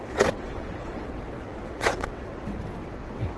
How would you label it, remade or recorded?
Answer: remade